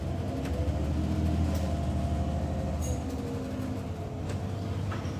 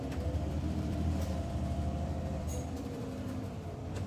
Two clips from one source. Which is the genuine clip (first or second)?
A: first